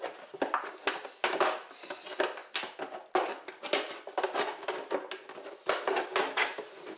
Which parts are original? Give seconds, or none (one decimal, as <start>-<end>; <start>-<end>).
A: 0.0-7.0